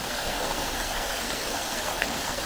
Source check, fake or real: fake